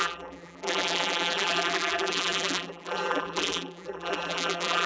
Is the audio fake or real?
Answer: fake